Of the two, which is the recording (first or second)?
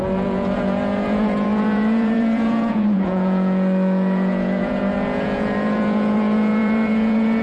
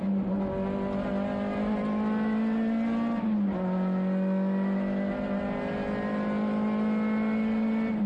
second